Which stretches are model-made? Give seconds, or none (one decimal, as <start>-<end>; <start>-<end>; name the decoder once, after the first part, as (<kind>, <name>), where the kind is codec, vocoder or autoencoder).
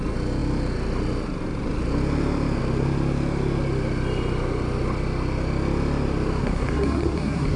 6.4-7.6 (codec, SNAC)